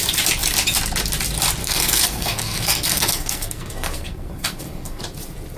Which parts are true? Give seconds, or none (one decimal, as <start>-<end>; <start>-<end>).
0.0-1.6; 5.0-5.6